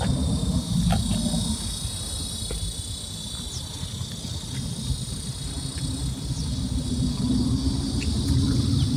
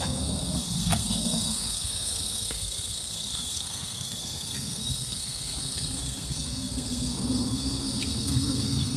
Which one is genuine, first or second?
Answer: first